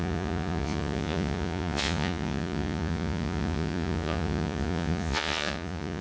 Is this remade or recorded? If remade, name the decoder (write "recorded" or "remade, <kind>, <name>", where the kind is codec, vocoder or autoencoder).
remade, vocoder, Vocos